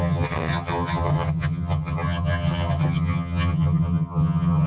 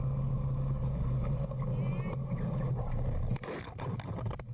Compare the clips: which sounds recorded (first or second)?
second